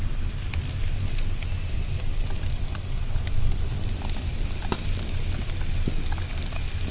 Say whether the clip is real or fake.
real